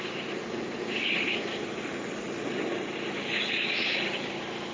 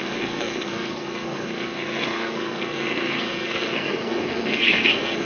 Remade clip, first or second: second